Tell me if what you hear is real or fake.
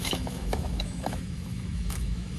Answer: fake